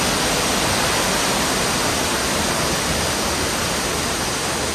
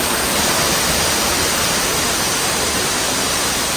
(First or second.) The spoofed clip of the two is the second